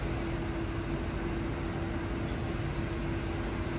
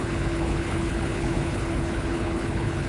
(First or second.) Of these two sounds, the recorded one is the first